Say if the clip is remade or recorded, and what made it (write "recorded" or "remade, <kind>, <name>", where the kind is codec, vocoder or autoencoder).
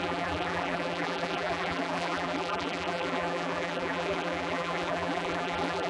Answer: remade, vocoder, BigVGAN v2